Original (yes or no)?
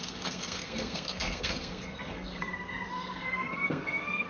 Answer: no